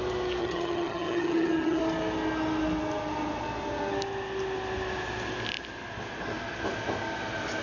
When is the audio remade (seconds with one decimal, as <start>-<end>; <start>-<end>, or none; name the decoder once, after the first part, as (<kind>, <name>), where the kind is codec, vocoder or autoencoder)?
0.4-1.8 (vocoder, HiFi-GAN)